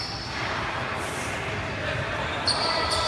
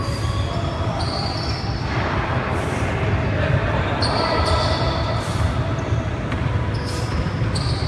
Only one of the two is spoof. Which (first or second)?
second